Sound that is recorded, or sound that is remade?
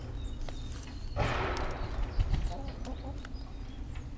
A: recorded